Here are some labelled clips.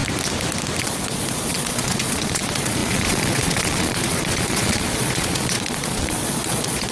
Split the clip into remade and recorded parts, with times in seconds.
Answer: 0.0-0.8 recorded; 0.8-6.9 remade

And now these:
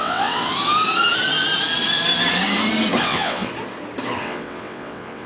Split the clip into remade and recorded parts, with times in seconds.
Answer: 0.0-0.5 remade; 0.5-3.0 recorded; 3.0-3.5 remade; 3.5-4.2 recorded; 4.2-5.3 remade